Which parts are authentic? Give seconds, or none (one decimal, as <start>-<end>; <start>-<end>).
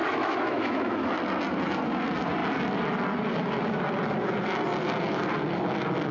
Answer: 1.2-6.1